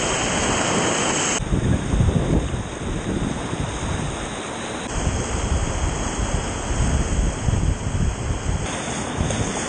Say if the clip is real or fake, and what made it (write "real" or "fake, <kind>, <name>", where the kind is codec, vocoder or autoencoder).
real